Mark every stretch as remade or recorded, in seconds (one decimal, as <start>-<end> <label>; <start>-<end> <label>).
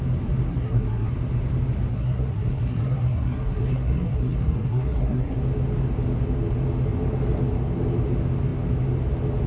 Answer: 0.0-0.5 recorded; 0.5-1.1 remade; 1.1-1.9 recorded; 1.9-5.4 remade; 5.4-9.5 recorded